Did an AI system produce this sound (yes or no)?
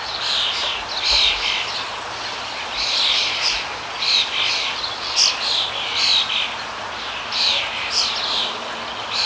no